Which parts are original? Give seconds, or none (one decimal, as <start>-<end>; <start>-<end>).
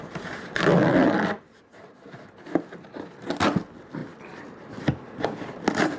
0.0-6.0